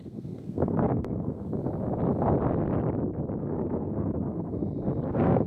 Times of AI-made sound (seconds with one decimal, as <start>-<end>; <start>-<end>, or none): 0.0-1.5; 3.4-4.6; 5.1-5.5

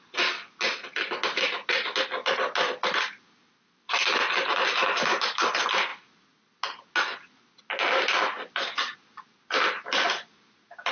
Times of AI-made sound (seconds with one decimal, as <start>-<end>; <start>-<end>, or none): none

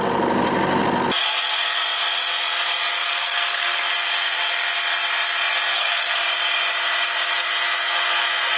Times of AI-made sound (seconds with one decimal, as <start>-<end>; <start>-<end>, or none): 3.0-3.9; 5.7-6.2

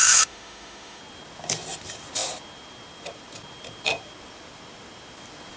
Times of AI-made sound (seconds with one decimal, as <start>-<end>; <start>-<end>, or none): 0.0-1.0

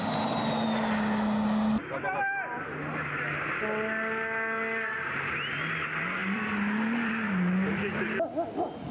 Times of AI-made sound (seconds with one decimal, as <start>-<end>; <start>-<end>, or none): 6.2-8.3